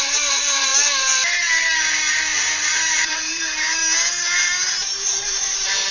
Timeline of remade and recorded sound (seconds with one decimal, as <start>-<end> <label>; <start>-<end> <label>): 0.0-0.7 remade; 0.7-1.9 recorded; 1.9-3.8 remade; 3.8-4.4 recorded; 4.4-5.9 remade